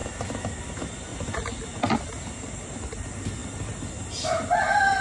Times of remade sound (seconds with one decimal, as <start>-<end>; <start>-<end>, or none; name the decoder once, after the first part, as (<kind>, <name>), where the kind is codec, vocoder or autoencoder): none